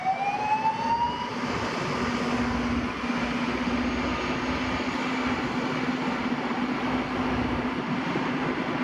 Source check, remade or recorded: recorded